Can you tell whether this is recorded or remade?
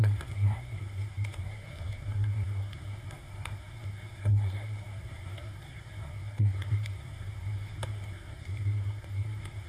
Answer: remade